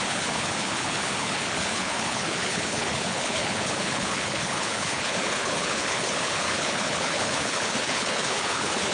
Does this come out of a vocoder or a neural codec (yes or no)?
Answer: yes